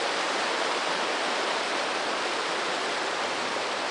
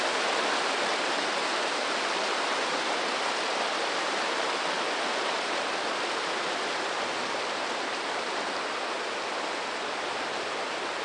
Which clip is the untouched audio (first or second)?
second